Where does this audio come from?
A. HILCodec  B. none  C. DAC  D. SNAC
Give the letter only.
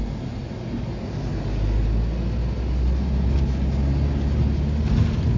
B